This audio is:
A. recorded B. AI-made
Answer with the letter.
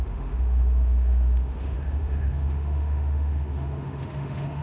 B